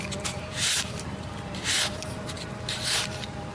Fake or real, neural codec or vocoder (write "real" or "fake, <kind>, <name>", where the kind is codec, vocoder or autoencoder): fake, vocoder, BigVGAN v2